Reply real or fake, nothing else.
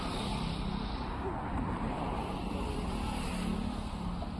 real